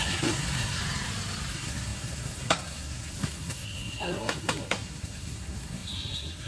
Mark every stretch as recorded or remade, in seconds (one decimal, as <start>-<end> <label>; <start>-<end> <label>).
0.0-0.8 remade; 0.8-1.5 recorded; 1.5-6.5 remade